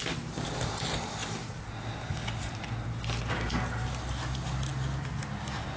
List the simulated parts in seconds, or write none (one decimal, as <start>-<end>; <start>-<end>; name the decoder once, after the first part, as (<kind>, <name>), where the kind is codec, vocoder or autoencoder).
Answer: none